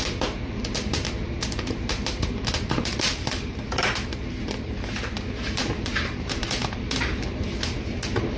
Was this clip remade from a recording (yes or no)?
yes